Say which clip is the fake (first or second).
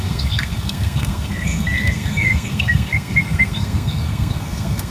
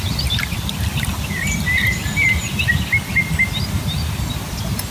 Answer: first